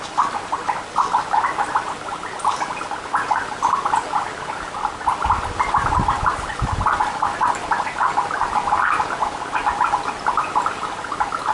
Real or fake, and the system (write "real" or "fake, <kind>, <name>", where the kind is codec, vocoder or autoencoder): real